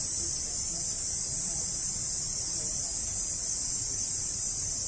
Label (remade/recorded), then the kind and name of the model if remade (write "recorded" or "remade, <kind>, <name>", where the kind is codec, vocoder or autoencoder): recorded